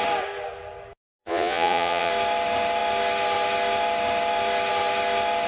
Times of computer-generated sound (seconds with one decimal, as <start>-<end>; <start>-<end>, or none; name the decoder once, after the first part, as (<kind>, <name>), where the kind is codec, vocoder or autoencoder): 1.2-2.1 (vocoder, Vocos)